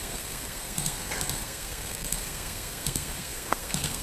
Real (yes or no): no